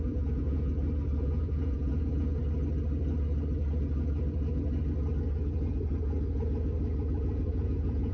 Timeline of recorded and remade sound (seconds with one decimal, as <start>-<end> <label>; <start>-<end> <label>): 0.0-0.7 remade; 0.7-1.2 recorded; 1.2-2.4 remade; 2.4-7.2 recorded; 7.2-8.1 remade